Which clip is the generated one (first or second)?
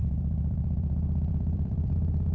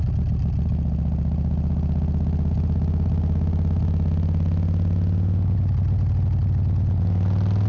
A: first